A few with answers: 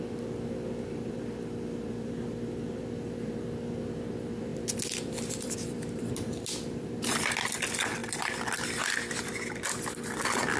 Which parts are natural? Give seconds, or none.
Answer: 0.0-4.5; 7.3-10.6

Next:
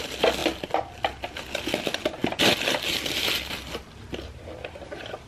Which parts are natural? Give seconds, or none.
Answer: 0.0-5.3

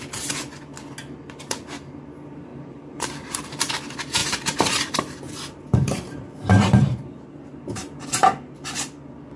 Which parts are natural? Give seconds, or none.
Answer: 0.0-2.5; 3.7-4.2; 7.0-7.5; 8.5-9.4

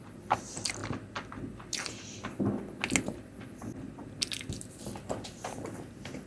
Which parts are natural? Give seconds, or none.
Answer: 0.8-4.6

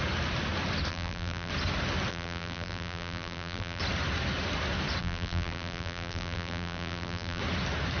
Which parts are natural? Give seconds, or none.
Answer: 0.0-0.9; 1.5-2.1; 3.8-5.0; 7.4-8.0

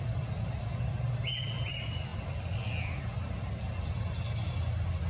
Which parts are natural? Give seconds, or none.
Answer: 0.0-5.1

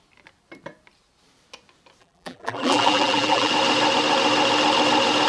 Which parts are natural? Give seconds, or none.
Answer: 0.0-2.0; 3.5-5.3